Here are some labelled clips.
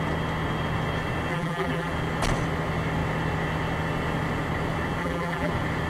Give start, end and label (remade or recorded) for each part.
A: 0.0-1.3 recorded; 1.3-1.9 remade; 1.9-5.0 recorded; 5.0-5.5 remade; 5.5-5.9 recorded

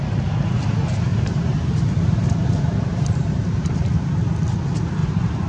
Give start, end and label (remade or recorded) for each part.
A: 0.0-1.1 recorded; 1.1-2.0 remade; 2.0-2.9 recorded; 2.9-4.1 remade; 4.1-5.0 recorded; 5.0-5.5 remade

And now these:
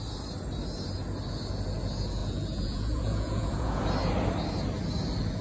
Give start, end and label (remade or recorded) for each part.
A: 0.0-2.2 recorded; 2.2-3.8 remade; 3.8-5.4 recorded

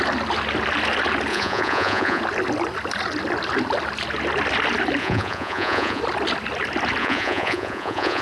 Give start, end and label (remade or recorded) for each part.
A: 0.0-1.3 recorded; 1.3-2.2 remade; 2.2-5.0 recorded; 5.0-6.0 remade; 6.0-7.0 recorded; 7.0-8.2 remade